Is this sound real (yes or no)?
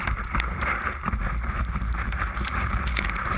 no